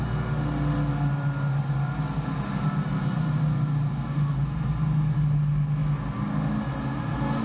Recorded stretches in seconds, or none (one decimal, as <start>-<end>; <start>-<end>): 0.0-7.4